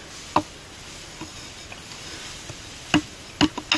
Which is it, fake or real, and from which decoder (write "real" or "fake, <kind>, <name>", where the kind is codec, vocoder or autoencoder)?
real